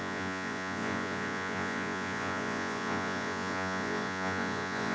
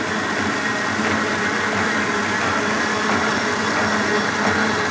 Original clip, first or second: second